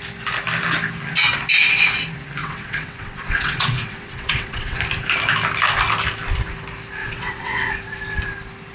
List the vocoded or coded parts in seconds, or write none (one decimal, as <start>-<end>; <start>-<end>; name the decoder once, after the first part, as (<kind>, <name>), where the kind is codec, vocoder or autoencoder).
2.4-4.8 (vocoder, WaveNeXt); 7.0-7.7